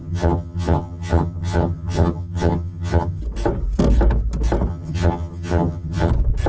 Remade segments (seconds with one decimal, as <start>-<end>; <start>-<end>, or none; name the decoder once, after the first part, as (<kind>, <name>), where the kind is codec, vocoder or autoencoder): 0.0-3.2 (vocoder, HiFi-GAN); 4.7-6.1